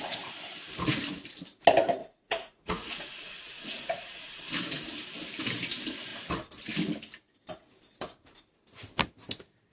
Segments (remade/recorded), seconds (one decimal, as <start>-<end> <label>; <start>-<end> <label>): 0.0-2.0 recorded; 2.0-4.5 remade; 4.5-9.7 recorded